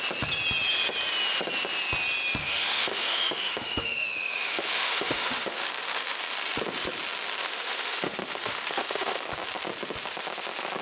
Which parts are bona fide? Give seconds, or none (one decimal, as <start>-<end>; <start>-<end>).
0.0-2.4; 6.2-7.4; 9.3-10.8